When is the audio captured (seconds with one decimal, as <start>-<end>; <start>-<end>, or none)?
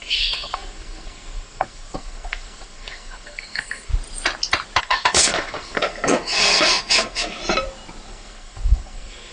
3.9-4.8; 7.4-8.1